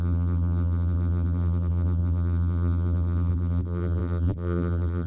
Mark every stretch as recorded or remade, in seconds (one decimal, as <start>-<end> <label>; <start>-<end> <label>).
0.0-5.1 remade